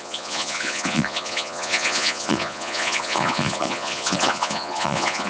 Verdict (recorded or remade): remade